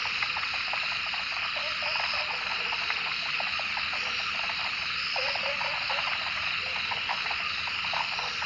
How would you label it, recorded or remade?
recorded